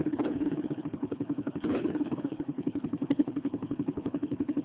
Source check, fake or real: fake